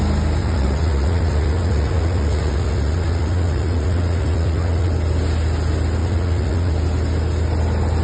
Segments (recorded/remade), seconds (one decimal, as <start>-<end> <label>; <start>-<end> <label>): 0.0-0.4 recorded; 0.4-4.9 remade; 4.9-6.0 recorded; 6.0-6.7 remade; 6.7-8.0 recorded